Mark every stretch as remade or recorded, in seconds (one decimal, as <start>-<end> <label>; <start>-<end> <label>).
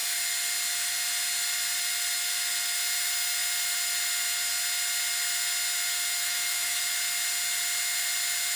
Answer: 0.0-6.2 recorded; 6.2-6.8 remade; 6.8-8.6 recorded